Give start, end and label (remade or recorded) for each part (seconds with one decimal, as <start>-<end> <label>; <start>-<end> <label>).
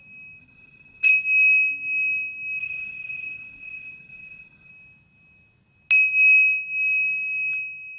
0.0-0.4 recorded; 0.4-1.1 remade; 1.1-2.6 recorded; 2.6-4.7 remade; 4.7-8.0 recorded